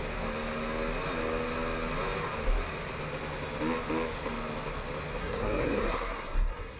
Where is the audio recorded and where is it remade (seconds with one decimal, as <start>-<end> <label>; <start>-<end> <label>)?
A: 0.0-5.2 recorded; 5.2-6.8 remade